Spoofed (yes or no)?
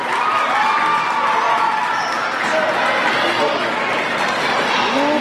no